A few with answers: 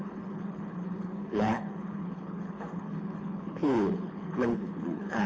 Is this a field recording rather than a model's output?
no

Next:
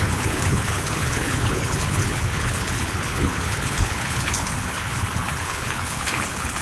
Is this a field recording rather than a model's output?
no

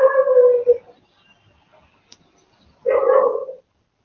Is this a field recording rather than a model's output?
yes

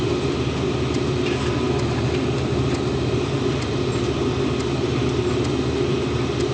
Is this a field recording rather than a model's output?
yes